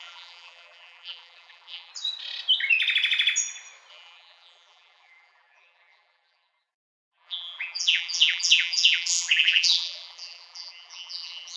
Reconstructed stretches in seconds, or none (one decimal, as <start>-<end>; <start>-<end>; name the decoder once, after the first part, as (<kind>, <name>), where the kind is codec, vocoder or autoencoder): 0.0-1.9 (vocoder, BigVGAN v2); 3.9-11.6